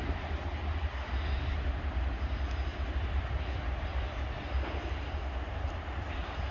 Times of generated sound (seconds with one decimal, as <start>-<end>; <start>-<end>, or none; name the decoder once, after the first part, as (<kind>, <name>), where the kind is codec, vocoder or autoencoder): none